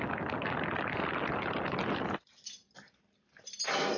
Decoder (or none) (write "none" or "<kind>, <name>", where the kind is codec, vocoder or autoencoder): none